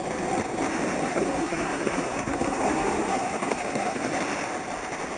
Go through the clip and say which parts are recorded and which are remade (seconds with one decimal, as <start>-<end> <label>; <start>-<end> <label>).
0.0-1.0 recorded; 1.0-4.1 remade; 4.1-5.2 recorded